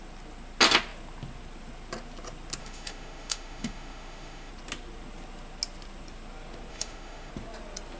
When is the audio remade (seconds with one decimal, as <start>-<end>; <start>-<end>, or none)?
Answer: 2.6-4.5; 6.7-7.3